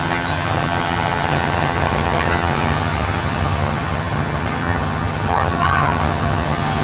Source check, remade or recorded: remade